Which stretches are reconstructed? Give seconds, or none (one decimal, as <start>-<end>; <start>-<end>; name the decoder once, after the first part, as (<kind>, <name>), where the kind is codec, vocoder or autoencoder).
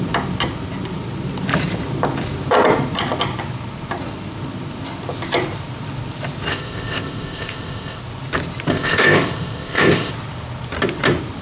6.5-8.0 (codec, ZipCodec); 8.7-10.1